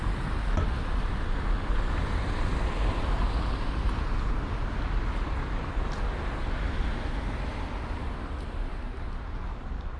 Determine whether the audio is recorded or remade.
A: recorded